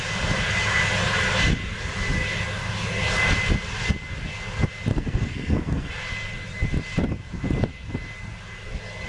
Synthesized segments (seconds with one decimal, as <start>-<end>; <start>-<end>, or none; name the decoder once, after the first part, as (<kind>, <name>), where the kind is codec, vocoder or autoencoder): 4.9-5.9 (codec, SNAC)